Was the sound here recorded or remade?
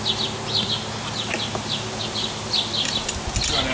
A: recorded